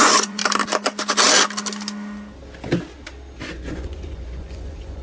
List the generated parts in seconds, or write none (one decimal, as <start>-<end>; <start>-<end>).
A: 0.0-0.4; 3.4-5.0